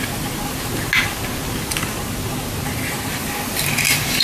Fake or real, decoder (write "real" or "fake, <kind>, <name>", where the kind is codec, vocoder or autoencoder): real